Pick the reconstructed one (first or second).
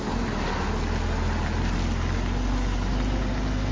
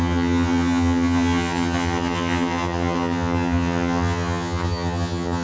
second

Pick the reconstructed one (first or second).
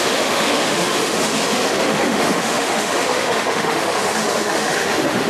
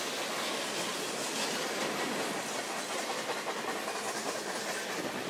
first